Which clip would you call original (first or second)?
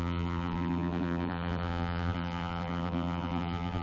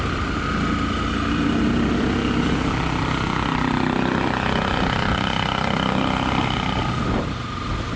second